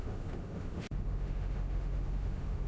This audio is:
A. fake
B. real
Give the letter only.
A